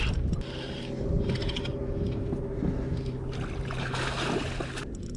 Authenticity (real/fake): real